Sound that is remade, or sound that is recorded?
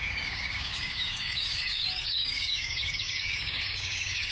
remade